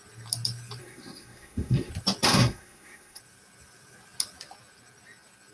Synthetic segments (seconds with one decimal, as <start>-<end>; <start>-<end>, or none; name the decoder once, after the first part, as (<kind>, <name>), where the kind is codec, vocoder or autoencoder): 0.8-1.9 (codec, SNAC); 2.3-3.2